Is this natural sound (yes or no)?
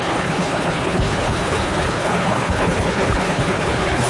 no